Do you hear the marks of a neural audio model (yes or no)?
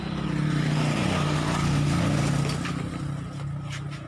no